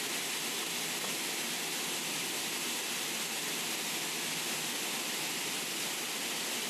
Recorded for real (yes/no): yes